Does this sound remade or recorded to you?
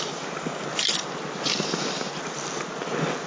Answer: recorded